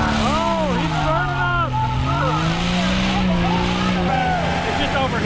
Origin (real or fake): real